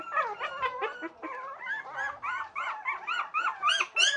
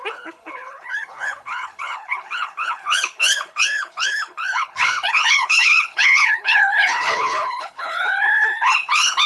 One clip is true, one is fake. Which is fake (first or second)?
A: second